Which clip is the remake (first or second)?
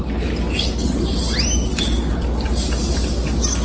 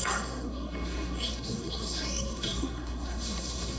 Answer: second